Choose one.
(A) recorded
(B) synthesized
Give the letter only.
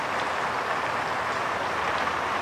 A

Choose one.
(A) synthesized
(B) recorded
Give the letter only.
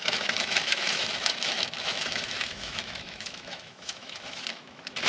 A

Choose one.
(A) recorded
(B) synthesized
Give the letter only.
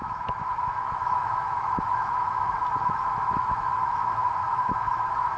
B